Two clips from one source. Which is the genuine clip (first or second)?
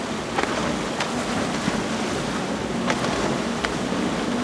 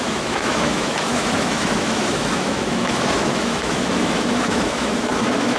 first